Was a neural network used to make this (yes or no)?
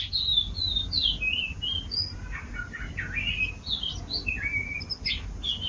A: no